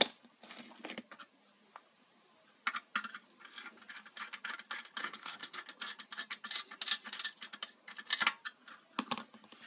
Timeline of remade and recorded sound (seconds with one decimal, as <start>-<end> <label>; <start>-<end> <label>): 0.0-5.0 recorded; 5.0-5.6 remade; 5.6-9.7 recorded